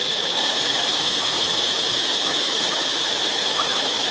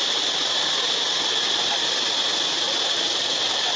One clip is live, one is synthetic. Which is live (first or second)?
second